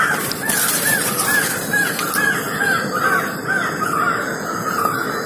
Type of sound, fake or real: real